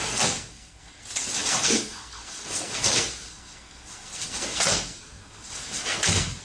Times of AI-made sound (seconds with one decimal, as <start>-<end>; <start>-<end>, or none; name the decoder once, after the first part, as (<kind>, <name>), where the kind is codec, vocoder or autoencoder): 0.0-6.4 (codec, SNAC)